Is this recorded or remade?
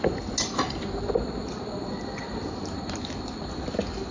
recorded